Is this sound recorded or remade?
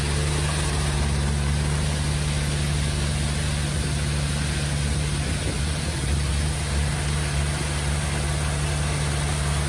recorded